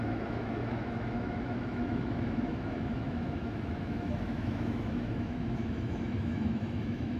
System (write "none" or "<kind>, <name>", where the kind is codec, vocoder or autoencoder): autoencoder, DAC-VAE